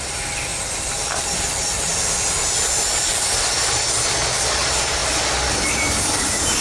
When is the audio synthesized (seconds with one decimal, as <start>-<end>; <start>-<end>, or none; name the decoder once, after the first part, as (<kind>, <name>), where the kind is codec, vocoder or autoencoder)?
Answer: none